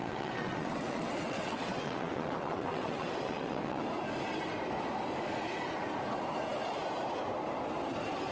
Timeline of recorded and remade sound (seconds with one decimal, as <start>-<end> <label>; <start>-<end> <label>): 0.0-3.8 remade; 3.8-8.3 recorded